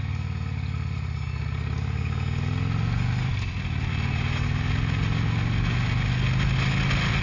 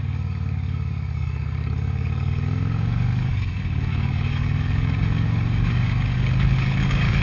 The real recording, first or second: first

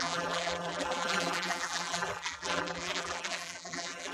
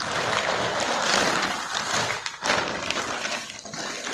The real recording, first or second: second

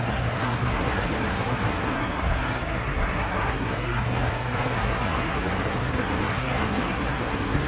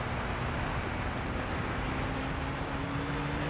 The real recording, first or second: second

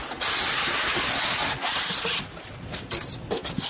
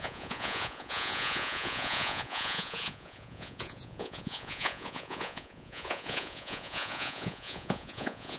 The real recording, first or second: first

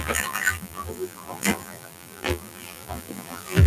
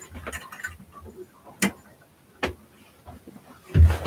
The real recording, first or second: second